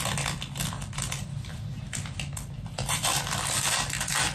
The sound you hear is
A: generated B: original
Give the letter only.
B